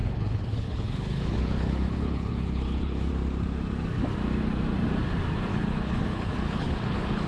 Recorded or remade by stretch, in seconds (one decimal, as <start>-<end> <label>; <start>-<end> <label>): 0.0-3.1 remade; 3.1-5.5 recorded; 5.5-7.3 remade